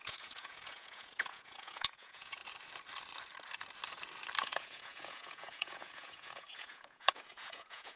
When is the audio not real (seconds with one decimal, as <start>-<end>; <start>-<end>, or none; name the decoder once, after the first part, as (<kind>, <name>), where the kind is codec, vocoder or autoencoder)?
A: 0.0-2.4 (vocoder, Vocos); 4.4-8.0